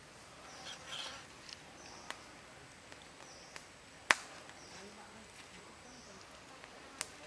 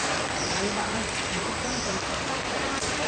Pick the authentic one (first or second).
first